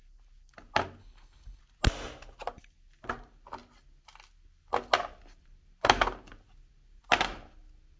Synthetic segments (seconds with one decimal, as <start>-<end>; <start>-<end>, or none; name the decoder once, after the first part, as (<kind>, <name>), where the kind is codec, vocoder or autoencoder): 1.0-1.6 (codec, HILCodec)